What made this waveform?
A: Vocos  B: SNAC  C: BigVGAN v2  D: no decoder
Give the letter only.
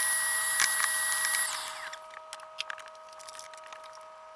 D